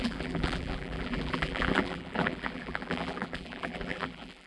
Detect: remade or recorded remade